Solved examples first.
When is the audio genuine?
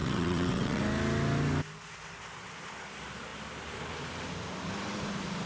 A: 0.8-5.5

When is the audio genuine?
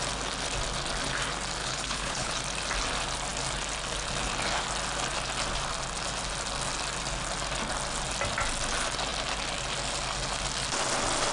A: 0.0-1.6; 2.3-11.3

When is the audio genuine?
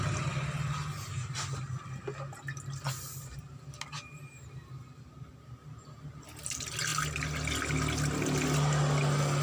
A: 0.0-9.4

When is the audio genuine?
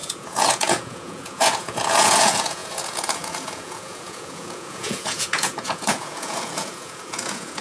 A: none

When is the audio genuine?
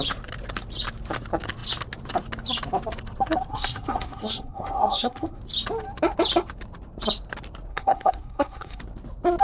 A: 0.0-3.5; 5.4-7.7; 8.8-9.4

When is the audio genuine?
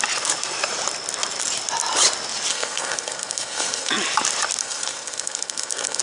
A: 0.0-2.5; 3.9-4.6